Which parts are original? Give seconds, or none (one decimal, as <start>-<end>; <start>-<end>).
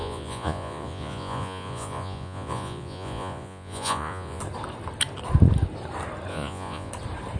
4.4-6.3; 6.9-7.4